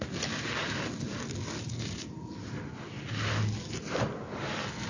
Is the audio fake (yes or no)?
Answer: no